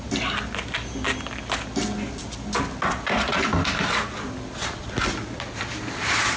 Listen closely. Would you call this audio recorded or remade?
recorded